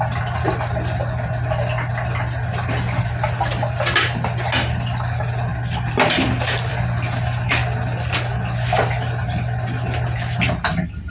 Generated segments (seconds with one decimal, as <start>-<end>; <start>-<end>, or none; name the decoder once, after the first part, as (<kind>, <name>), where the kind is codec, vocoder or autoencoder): none